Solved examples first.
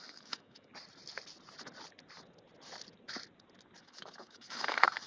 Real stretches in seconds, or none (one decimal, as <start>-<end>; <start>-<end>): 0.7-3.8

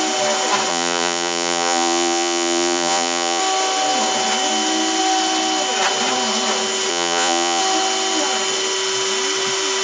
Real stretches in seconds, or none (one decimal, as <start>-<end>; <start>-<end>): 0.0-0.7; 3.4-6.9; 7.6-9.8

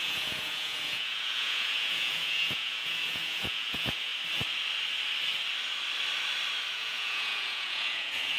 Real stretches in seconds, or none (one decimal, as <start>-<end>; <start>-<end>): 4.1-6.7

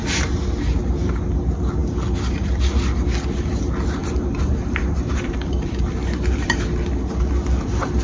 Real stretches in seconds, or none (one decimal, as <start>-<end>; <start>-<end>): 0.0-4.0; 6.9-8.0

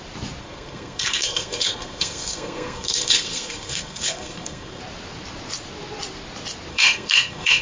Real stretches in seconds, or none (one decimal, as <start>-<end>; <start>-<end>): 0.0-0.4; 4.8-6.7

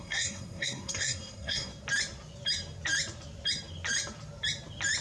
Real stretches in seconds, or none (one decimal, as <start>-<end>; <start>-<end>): 1.7-5.0